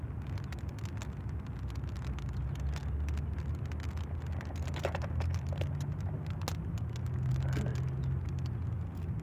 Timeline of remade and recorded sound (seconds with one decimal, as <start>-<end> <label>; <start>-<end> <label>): 0.0-9.2 recorded